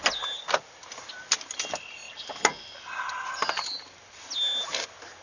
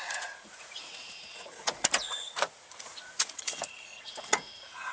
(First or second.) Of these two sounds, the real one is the first